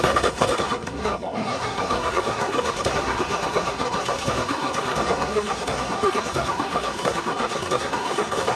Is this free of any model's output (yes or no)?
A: no